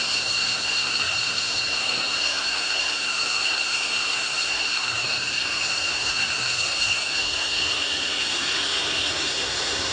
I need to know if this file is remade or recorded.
remade